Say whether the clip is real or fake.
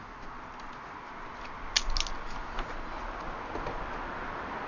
real